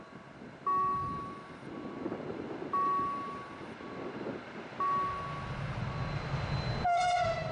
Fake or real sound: real